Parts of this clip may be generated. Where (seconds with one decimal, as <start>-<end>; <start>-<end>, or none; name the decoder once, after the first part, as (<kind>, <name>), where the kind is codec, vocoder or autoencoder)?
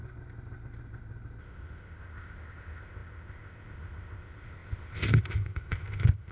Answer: 1.4-6.3 (codec, ZipCodec)